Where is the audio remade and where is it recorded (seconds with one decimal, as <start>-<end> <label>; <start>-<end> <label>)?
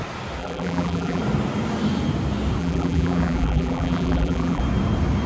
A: 0.0-0.4 recorded; 0.4-1.2 remade; 1.2-2.6 recorded; 2.6-4.6 remade; 4.6-5.3 recorded